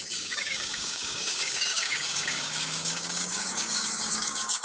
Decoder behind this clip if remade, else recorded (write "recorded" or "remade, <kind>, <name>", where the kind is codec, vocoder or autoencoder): remade, codec, DAC